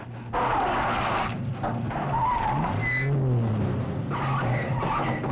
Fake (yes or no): no